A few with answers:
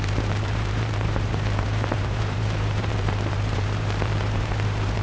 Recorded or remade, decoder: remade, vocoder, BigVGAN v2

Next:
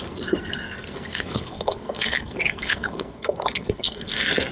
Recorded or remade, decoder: remade, codec, SNAC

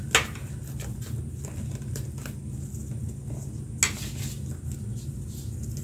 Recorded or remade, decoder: recorded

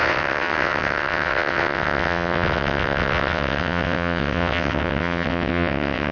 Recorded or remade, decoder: remade, vocoder, WaveNeXt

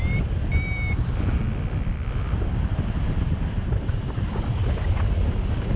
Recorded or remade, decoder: recorded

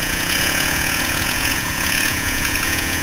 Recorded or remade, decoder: remade, vocoder, Vocos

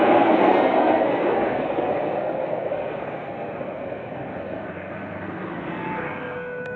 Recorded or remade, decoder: remade, codec, SNAC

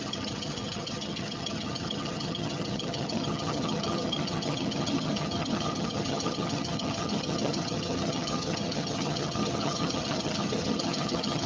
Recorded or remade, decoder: remade, vocoder, HiFi-GAN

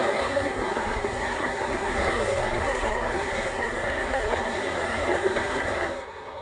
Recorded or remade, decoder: remade, codec, SNAC